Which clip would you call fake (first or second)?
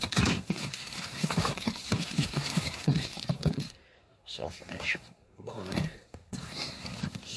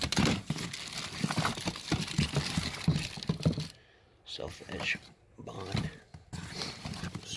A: first